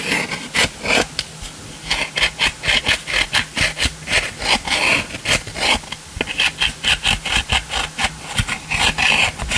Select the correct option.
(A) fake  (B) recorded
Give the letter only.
B